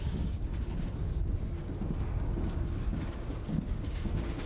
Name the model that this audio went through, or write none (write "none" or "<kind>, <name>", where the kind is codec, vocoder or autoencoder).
codec, DAC